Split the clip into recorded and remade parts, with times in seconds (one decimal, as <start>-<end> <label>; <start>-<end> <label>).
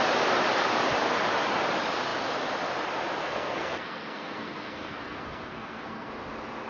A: 0.0-3.2 recorded; 3.2-6.1 remade; 6.1-6.7 recorded